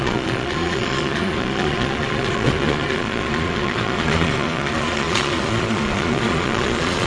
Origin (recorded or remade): remade